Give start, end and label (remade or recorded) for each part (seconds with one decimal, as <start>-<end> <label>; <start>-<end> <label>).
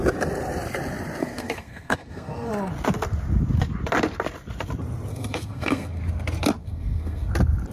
0.0-1.2 recorded; 1.2-2.5 remade; 2.5-5.1 recorded; 5.1-6.0 remade; 6.0-6.6 recorded; 6.6-7.3 remade; 7.3-7.7 recorded